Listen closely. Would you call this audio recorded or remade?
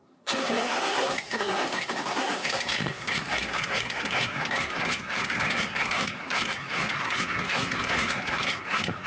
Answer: remade